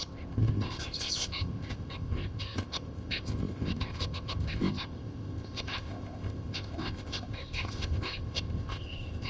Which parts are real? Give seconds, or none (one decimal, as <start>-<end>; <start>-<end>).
none